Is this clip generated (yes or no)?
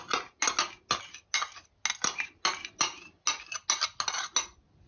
no